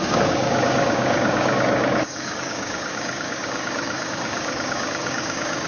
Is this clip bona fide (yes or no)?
no